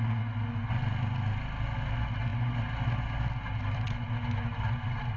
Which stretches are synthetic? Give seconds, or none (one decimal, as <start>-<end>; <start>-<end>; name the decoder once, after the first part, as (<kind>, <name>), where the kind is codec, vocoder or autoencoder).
none